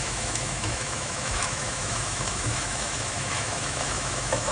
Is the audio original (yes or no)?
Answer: no